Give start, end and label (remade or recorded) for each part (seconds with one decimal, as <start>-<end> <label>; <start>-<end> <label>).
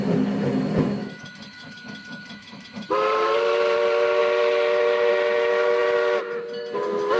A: 0.0-1.0 recorded; 1.0-2.9 remade; 2.9-7.2 recorded